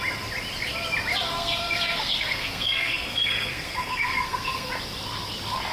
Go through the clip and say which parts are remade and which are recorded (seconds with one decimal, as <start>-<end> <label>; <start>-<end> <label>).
0.0-1.3 recorded; 1.3-4.7 remade; 4.7-5.7 recorded